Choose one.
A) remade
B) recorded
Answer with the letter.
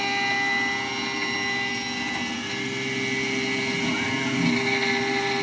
B